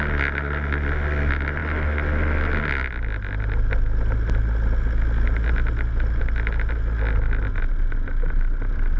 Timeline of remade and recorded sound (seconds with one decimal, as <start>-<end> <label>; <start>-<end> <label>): 0.0-9.0 recorded